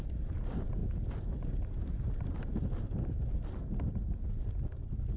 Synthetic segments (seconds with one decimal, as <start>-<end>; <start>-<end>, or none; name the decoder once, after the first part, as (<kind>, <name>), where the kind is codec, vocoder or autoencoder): none